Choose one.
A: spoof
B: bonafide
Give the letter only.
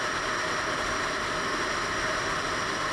B